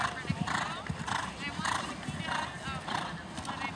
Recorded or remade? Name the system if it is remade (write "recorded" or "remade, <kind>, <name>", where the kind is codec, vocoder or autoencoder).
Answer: recorded